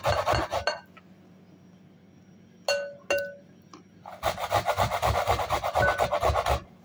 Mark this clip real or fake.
real